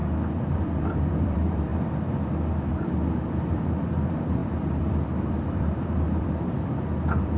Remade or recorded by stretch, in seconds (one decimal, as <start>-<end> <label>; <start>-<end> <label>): 0.0-0.5 recorded; 0.5-1.7 remade; 1.7-2.7 recorded; 2.7-7.4 remade